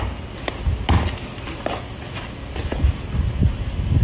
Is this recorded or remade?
recorded